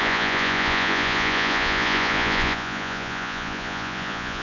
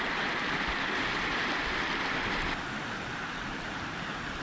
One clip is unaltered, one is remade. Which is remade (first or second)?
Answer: first